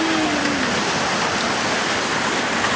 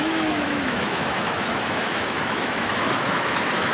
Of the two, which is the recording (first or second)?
first